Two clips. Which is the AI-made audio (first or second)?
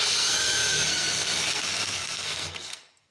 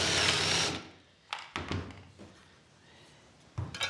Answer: first